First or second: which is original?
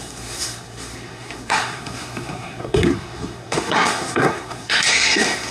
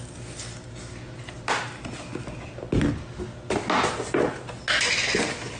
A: second